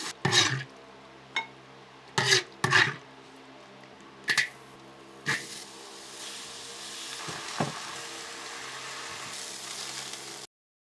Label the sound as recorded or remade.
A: recorded